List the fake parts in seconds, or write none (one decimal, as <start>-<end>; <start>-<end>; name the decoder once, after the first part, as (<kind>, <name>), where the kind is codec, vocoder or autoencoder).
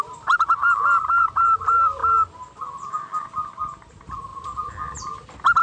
0.0-2.0 (vocoder, BigVGAN v2); 3.9-4.3